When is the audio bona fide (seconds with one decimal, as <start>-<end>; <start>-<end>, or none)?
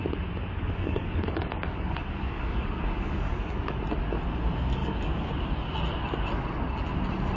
0.0-0.4; 3.8-4.8; 5.3-7.4